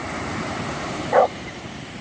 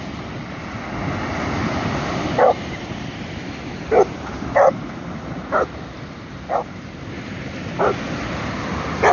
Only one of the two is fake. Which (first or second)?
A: first